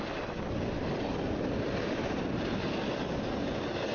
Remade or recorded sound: recorded